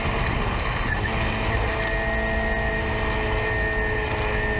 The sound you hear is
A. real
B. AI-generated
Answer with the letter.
A